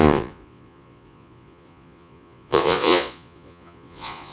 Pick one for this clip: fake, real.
fake